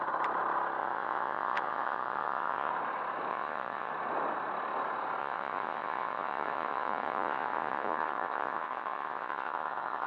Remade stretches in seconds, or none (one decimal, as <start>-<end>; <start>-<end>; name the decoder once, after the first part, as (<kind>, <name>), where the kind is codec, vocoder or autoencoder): 0.8-2.7 (vocoder, Vocos); 3.3-3.9; 5.2-10.1